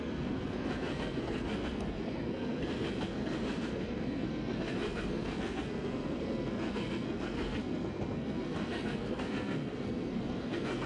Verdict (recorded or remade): remade